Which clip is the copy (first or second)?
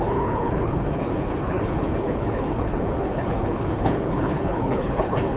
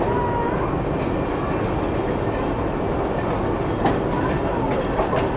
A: first